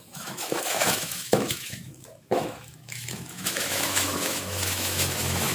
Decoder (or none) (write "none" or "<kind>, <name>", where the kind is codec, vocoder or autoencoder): autoencoder, DAC-VAE